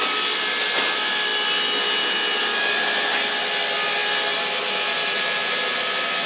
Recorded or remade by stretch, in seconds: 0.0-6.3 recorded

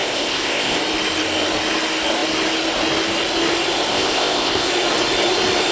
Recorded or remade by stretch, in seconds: 0.0-0.8 remade; 0.8-3.9 recorded; 3.9-4.7 remade; 4.7-5.7 recorded